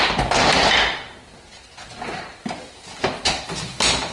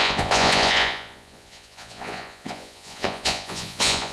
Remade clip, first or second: second